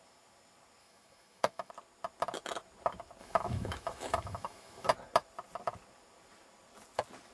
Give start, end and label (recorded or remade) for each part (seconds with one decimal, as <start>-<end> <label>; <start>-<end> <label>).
0.0-0.8 recorded; 0.8-1.7 remade; 1.7-3.2 recorded; 3.2-4.9 remade; 4.9-7.3 recorded